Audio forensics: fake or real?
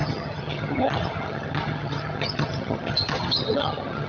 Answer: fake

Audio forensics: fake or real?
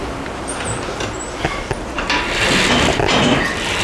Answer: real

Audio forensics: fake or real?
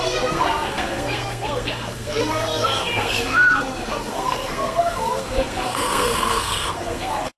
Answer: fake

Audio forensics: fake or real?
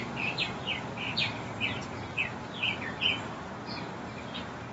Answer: real